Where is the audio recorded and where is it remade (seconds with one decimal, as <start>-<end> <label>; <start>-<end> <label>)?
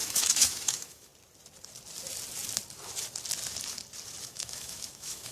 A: 0.0-1.1 remade; 1.1-4.2 recorded; 4.2-5.3 remade